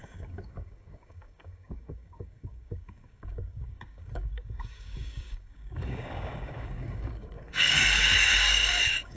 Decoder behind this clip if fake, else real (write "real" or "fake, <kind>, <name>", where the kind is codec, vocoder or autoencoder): fake, codec, DAC